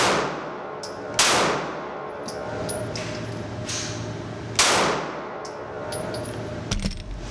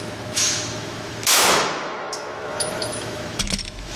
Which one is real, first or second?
first